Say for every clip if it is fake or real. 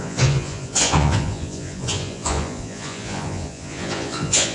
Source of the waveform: fake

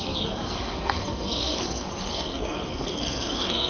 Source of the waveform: fake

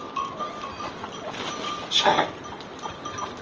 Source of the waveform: real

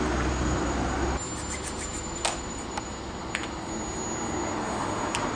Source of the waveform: real